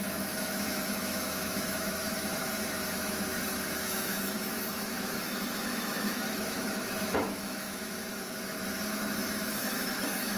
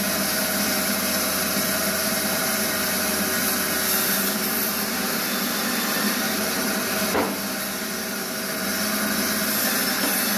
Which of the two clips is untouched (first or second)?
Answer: second